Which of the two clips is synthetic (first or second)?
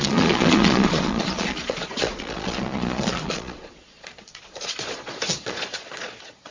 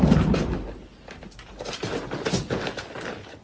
first